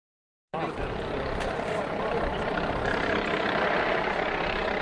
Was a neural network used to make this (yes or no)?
no